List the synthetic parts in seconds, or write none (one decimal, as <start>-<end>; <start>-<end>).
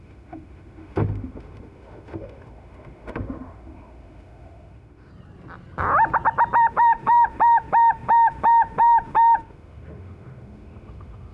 0.0-5.1; 6.7-11.3